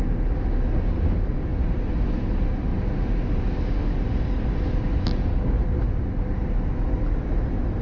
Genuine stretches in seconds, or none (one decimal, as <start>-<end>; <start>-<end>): 0.0-7.8